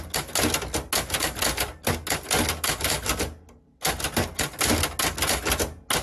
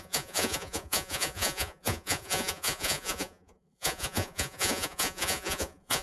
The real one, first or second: first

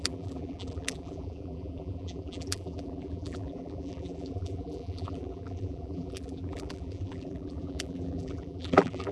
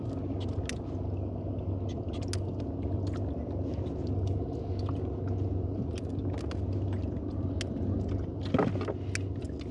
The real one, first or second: second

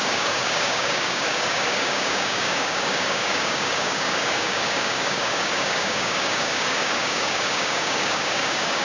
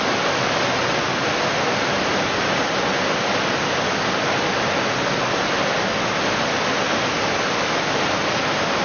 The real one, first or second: second